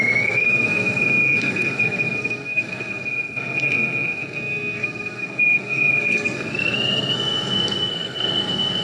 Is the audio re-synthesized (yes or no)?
yes